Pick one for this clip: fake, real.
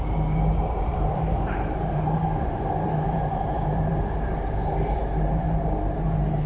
fake